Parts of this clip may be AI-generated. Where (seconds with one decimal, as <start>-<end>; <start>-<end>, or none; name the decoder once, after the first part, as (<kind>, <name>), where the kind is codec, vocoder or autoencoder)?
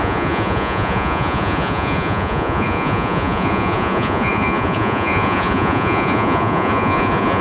0.0-7.4 (vocoder, Vocos)